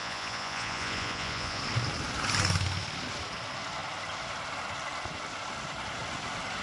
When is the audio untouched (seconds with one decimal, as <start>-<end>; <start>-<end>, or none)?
1.6-6.6